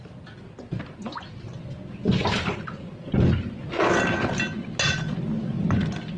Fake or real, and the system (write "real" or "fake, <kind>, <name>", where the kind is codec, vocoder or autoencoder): real